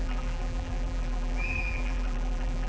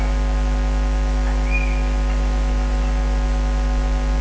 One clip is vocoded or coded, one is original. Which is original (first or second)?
second